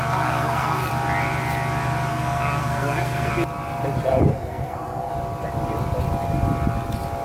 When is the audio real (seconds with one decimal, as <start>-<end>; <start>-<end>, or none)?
0.9-2.1; 3.3-4.3; 5.1-7.2